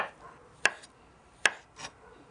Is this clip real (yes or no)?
yes